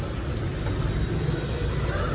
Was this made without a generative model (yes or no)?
yes